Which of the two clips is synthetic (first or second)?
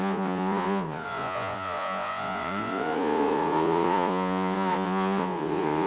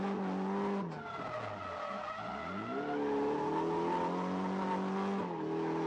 first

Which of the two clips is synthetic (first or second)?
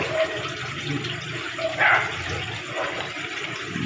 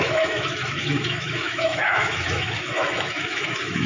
second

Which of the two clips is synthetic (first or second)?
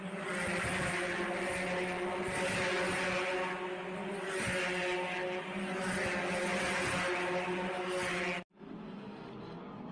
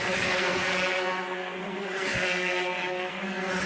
second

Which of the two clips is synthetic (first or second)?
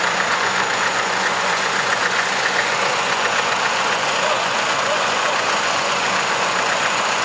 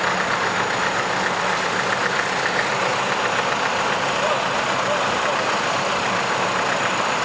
first